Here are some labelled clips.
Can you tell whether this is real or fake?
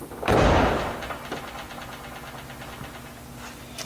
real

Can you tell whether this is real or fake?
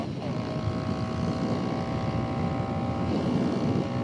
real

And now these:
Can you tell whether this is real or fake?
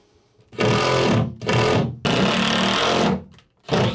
real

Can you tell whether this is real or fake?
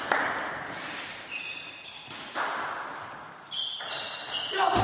real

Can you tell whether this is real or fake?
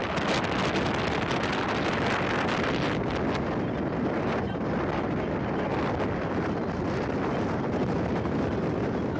real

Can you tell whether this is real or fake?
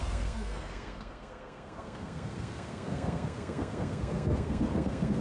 fake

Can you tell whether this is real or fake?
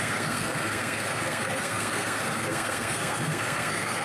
fake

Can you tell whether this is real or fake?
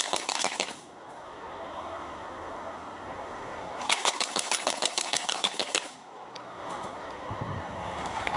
fake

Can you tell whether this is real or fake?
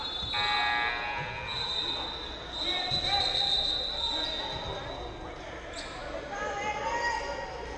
real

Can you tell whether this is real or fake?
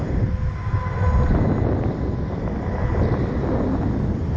real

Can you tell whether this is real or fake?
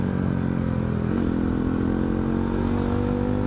real